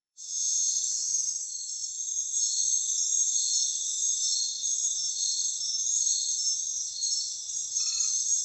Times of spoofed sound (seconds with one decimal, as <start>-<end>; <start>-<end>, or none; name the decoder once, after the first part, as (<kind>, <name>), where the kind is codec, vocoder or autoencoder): 0.0-0.7 (vocoder, WaveNeXt)